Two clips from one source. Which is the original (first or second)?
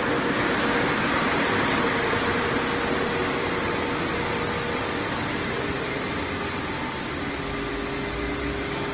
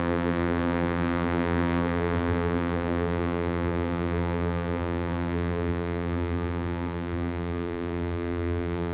first